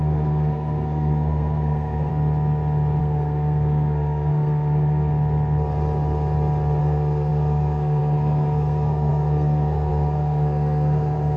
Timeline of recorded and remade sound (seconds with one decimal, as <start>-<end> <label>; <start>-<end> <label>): 0.0-2.1 remade; 2.1-3.0 recorded; 3.0-5.1 remade; 5.1-6.8 recorded; 6.8-11.4 remade